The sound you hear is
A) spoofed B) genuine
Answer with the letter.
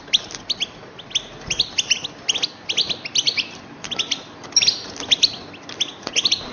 B